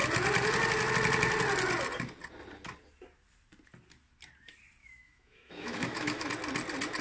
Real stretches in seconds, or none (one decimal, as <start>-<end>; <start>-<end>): 0.0-4.8; 6.3-7.0